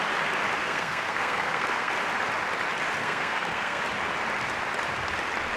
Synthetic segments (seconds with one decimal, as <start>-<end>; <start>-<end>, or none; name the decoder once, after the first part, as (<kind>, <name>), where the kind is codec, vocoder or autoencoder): 0.6-1.9 (codec, SNAC); 3.0-3.8

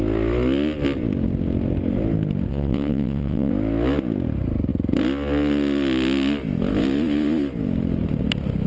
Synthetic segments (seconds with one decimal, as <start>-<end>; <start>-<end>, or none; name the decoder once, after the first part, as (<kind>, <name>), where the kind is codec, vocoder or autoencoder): 2.5-3.5 (vocoder, WaveNeXt)

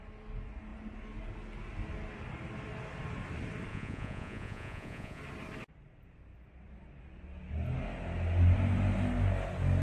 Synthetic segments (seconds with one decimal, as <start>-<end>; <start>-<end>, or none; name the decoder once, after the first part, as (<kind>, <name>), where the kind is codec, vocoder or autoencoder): 3.7-5.2 (vocoder, Vocos)